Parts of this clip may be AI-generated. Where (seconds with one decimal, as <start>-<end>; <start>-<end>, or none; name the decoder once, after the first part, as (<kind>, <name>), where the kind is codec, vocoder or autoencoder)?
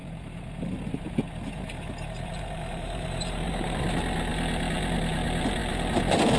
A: 0.0-3.8 (vocoder, BigVGAN v2)